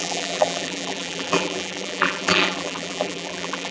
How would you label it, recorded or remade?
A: remade